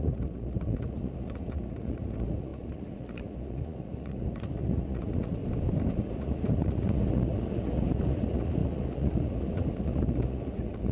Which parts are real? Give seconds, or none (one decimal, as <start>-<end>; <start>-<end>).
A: 5.4-5.9